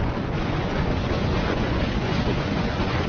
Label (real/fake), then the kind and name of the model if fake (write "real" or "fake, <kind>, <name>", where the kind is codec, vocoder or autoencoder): fake, vocoder, Vocos